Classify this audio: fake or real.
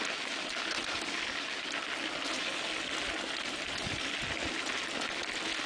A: real